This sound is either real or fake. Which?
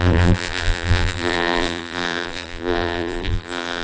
fake